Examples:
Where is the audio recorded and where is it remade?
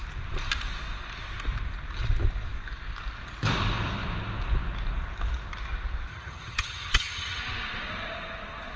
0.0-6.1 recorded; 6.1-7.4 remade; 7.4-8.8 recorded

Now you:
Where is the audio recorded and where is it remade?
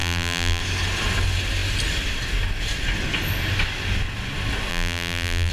0.0-0.6 remade; 0.6-4.7 recorded; 4.7-5.5 remade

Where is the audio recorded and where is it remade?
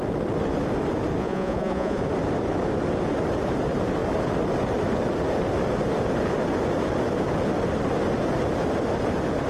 0.0-1.2 recorded; 1.2-2.0 remade; 2.0-9.5 recorded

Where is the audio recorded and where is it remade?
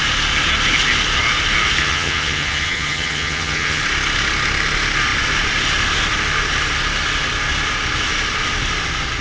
0.0-1.8 recorded; 1.8-3.8 remade; 3.8-9.2 recorded